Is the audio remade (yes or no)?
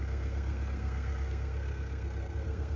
yes